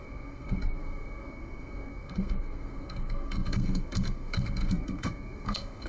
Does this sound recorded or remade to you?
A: remade